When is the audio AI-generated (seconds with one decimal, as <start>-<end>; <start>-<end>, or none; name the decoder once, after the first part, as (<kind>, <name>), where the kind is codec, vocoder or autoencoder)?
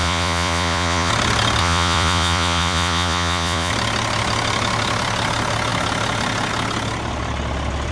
0.0-1.1 (vocoder, Vocos); 1.6-3.7